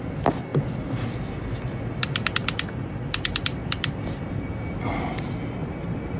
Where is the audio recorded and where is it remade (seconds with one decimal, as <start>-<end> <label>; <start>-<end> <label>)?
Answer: 0.0-0.5 recorded; 0.5-1.7 remade; 1.7-3.6 recorded; 3.6-4.5 remade; 4.5-5.6 recorded; 5.6-6.2 remade